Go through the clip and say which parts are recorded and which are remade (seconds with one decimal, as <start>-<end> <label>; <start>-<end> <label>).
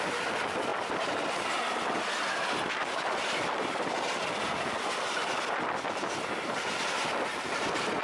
0.0-5.2 remade; 5.2-7.3 recorded; 7.3-8.0 remade